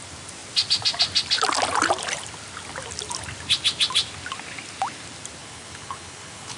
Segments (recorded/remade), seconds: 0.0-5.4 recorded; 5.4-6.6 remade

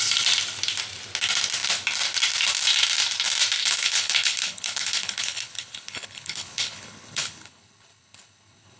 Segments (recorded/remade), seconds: 0.0-3.6 recorded; 3.6-8.8 remade

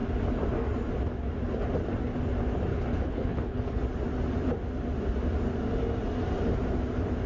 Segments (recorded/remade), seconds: 0.0-2.7 recorded; 2.7-3.8 remade; 3.8-7.3 recorded

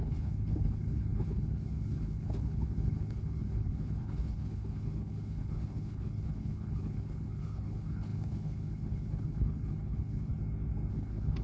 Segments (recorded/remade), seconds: 0.0-10.3 remade; 10.3-10.9 recorded; 10.9-11.4 remade

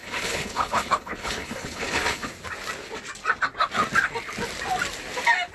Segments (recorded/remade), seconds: 0.0-2.3 remade; 2.3-5.5 recorded

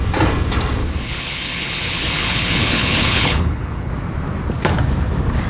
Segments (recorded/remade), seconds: 0.0-0.8 recorded; 0.8-3.9 remade; 3.9-5.5 recorded

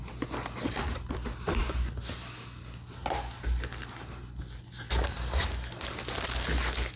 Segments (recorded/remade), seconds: 0.0-7.0 recorded

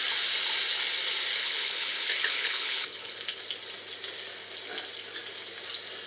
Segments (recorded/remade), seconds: 0.0-1.4 recorded; 1.4-3.4 remade; 3.4-6.1 recorded